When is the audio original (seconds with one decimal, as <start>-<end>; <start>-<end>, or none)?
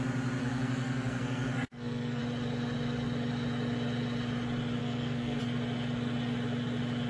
0.0-0.4; 2.2-4.8; 5.4-7.1